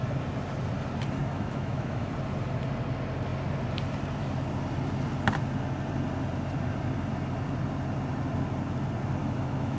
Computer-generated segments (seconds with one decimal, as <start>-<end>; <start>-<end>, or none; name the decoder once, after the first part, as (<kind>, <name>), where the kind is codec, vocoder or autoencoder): 1.2-2.1 (autoencoder, DAC-VAE); 9.2-9.8